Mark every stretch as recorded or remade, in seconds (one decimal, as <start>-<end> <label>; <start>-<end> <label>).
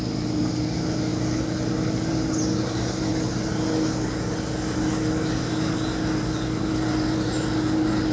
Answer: 0.0-8.1 recorded